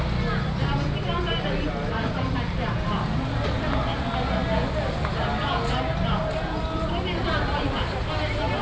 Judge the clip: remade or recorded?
recorded